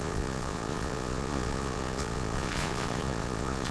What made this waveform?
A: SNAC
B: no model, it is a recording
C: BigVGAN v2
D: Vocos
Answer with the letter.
D